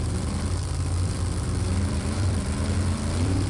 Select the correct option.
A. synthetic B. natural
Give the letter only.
A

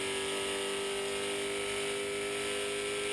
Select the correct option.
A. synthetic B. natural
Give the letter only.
B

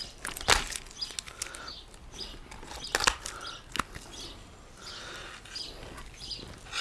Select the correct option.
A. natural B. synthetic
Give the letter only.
A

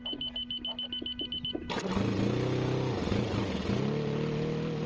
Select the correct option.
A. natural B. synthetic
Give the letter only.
A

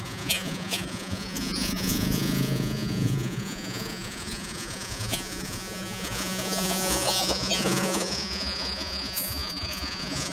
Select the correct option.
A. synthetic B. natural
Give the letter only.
A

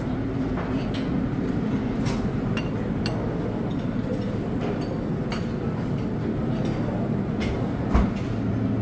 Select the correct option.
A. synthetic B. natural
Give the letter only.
B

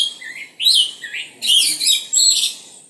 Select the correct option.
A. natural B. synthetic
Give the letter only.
A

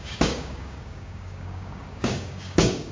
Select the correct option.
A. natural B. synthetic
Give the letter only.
B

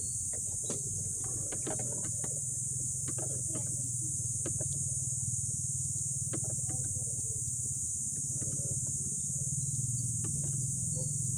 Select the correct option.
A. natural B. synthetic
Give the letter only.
A